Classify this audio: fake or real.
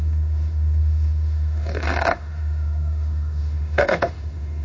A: fake